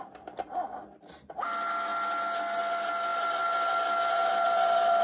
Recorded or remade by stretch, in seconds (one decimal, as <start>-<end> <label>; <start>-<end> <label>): 0.0-5.0 recorded